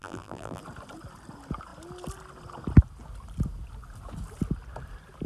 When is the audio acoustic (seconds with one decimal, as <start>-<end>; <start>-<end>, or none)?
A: 0.6-5.3

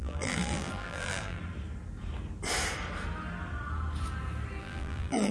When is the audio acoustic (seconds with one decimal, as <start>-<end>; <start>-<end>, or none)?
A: 1.4-4.6

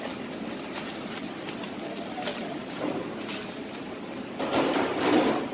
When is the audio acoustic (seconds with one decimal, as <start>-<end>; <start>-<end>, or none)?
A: 0.0-2.3; 4.4-5.5

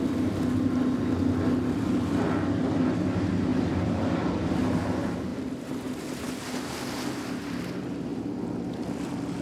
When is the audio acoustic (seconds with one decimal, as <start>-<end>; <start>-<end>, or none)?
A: 0.0-3.5; 4.1-5.3; 6.3-9.4

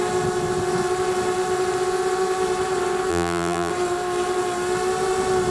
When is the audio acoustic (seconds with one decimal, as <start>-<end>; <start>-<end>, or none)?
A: 0.0-3.1; 3.7-5.5